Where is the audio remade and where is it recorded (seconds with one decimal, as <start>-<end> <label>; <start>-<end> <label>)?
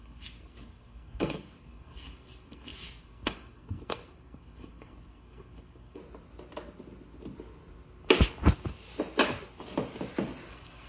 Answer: 0.0-6.0 remade; 6.0-10.5 recorded; 10.5-10.9 remade